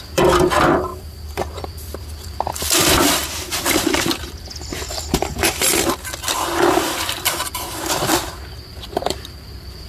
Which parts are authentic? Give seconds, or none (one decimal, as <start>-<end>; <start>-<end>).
none